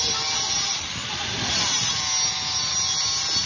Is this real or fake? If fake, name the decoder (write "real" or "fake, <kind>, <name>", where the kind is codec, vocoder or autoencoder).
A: real